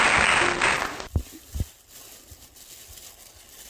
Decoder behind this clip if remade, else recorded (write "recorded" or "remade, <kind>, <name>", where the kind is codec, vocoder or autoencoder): recorded